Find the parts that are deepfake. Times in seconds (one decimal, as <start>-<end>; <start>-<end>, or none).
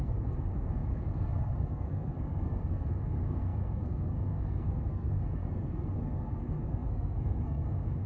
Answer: 0.0-8.1